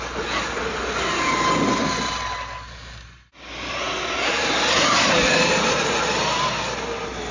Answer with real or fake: real